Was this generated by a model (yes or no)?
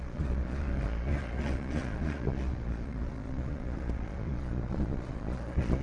yes